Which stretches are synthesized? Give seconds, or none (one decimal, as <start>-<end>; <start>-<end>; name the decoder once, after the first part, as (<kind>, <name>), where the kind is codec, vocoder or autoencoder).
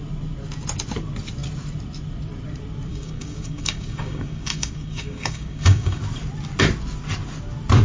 2.9-6.0 (codec, DAC)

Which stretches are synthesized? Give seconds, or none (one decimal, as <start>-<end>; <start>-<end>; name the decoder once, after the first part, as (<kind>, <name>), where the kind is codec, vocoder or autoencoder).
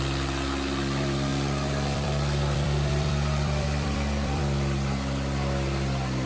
1.3-4.4 (vocoder, BigVGAN v2)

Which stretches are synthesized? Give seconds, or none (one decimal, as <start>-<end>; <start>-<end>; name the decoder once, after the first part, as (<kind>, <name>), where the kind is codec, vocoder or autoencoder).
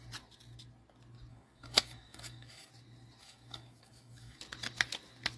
1.3-2.7 (codec, DAC); 3.2-4.4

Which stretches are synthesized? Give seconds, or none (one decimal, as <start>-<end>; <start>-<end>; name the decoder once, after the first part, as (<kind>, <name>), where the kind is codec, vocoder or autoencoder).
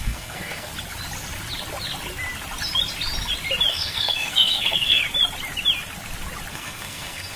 0.0-0.7 (codec, SNAC); 3.7-5.0; 6.5-7.4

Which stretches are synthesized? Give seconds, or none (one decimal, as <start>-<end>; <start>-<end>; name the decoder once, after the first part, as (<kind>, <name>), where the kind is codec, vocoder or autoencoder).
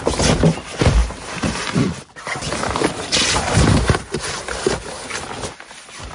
none